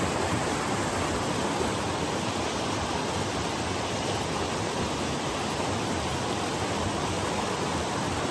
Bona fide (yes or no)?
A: yes